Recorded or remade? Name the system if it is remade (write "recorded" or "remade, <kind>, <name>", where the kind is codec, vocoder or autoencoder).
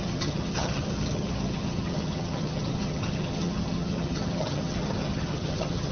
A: remade, vocoder, HiFi-GAN